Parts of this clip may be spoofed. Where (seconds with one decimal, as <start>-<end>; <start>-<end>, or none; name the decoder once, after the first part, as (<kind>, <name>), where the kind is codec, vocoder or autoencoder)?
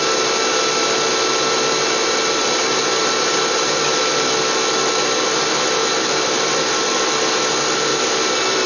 2.4-3.9 (vocoder, BigVGAN v2); 5.8-6.7; 7.9-8.7